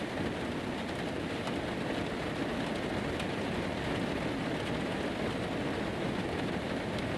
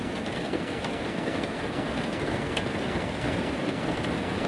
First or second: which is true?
first